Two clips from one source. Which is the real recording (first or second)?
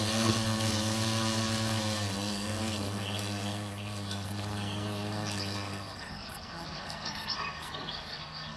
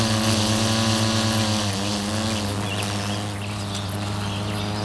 second